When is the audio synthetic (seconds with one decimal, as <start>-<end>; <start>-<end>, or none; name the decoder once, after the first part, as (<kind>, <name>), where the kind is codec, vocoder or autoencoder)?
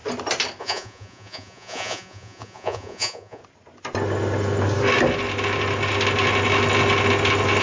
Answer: 0.6-3.4 (vocoder, Vocos)